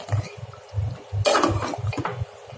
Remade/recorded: recorded